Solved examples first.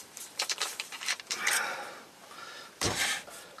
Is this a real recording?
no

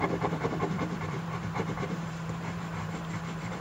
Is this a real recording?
no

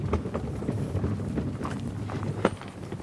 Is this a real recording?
yes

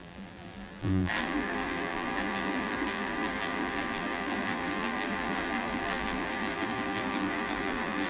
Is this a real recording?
no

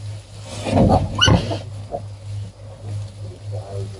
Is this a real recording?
yes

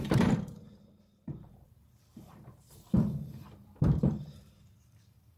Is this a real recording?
no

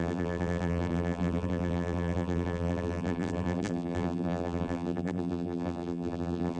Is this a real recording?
no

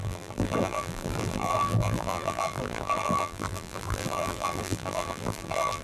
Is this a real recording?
no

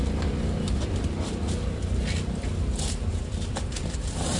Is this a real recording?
no